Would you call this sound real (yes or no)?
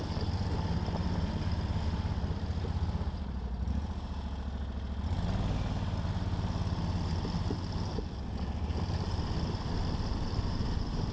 yes